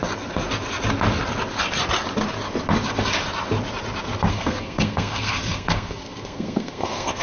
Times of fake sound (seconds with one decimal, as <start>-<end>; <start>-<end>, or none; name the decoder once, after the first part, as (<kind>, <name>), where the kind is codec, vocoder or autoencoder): 4.3-7.2 (codec, SNAC)